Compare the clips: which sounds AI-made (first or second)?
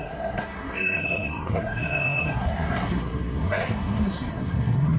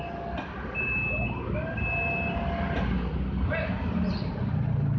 first